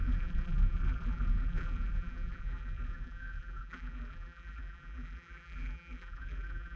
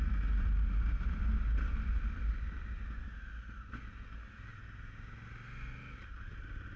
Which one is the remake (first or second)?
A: first